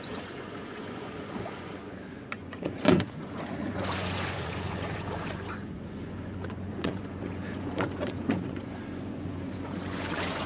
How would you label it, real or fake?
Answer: fake